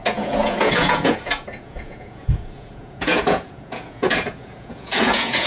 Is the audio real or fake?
fake